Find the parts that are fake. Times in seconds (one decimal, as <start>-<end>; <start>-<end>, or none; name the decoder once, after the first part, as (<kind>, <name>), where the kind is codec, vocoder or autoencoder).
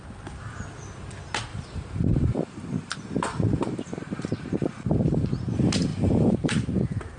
1.5-5.4 (vocoder, BigVGAN v2); 5.9-7.2